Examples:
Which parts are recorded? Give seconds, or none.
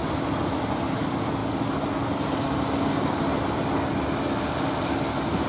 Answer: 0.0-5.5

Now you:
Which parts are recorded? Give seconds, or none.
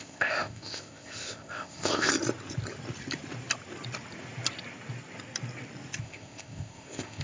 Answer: 2.1-6.0